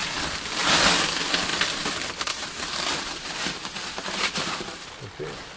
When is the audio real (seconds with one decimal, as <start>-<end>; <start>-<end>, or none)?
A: 0.0-1.5; 4.9-5.6